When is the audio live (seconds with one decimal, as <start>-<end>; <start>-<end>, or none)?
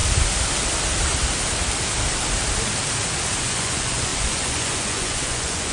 0.0-3.4